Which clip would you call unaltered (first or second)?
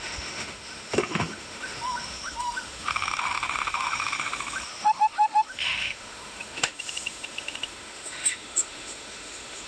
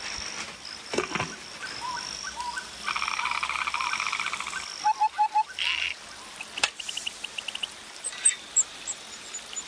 second